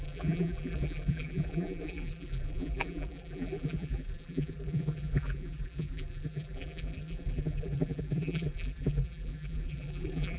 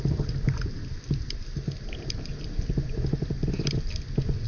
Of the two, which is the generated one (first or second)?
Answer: first